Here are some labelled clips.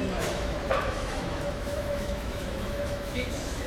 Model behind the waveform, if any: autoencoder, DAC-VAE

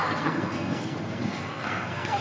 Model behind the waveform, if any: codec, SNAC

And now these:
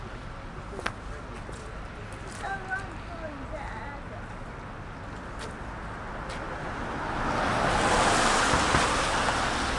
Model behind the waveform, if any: none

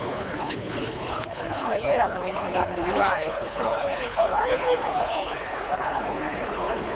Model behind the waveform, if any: codec, HILCodec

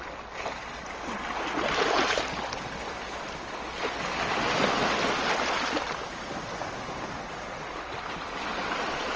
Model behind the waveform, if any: none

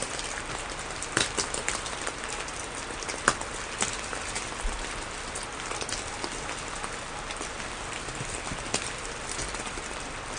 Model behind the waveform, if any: none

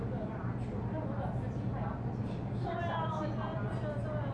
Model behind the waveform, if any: none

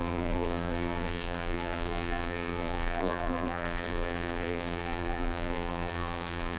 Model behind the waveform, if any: vocoder, BigVGAN v2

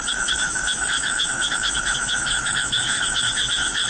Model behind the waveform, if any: autoencoder, DAC-VAE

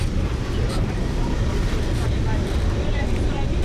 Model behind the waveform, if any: vocoder, BigVGAN v2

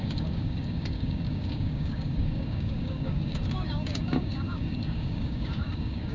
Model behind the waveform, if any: codec, DAC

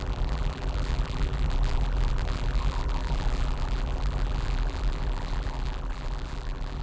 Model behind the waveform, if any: vocoder, BigVGAN v2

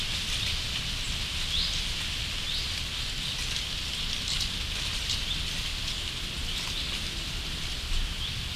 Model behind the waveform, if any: none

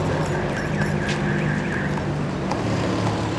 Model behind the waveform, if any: none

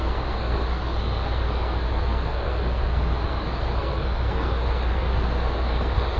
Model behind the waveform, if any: codec, SNAC